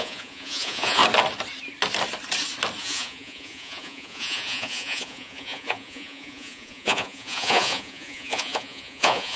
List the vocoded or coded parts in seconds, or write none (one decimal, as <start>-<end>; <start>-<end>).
0.0-1.0; 2.8-9.4